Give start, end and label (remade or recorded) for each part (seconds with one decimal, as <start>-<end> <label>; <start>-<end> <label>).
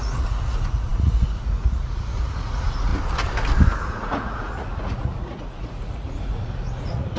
0.0-2.9 remade; 2.9-3.9 recorded; 3.9-7.2 remade